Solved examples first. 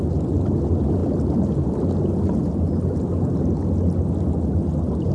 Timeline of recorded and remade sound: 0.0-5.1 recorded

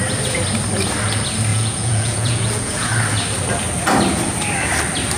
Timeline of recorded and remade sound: 0.0-1.5 recorded; 1.5-2.9 remade; 2.9-5.2 recorded

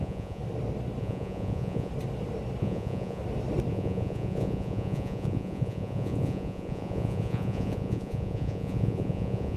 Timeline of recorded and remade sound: 0.0-0.4 remade; 0.4-1.0 recorded; 1.0-1.9 remade; 1.9-2.6 recorded; 2.6-3.2 remade; 3.2-3.7 recorded; 3.7-9.6 remade

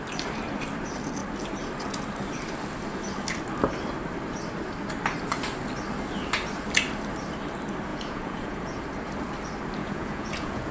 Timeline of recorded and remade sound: 0.0-7.9 recorded; 7.9-8.8 remade; 8.8-9.8 recorded; 9.8-10.7 remade

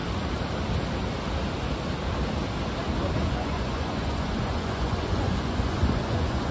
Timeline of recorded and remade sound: 0.0-3.2 recorded; 3.2-6.5 remade

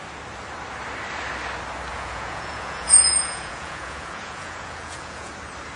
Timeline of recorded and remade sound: 0.0-1.9 recorded; 1.9-5.3 remade; 5.3-5.8 recorded

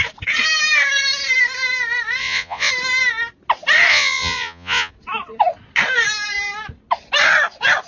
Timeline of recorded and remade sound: 0.0-2.2 recorded; 2.2-2.7 remade; 2.7-3.9 recorded; 3.9-4.9 remade; 4.9-7.9 recorded

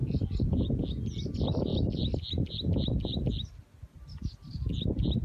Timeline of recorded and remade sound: 0.0-0.8 remade; 0.8-5.2 recorded